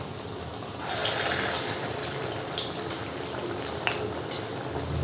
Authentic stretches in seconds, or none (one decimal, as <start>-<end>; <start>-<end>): 0.0-1.0; 4.0-5.0